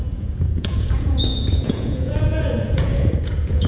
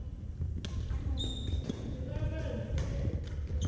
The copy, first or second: first